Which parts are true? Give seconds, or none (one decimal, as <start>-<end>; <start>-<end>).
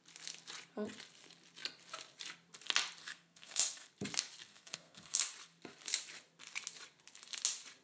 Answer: 0.0-3.0; 3.9-4.5; 5.2-7.8